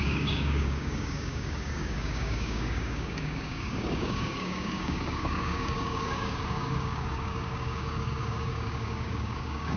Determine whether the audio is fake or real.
fake